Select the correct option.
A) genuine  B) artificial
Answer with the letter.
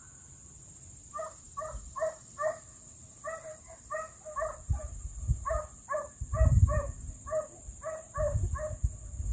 A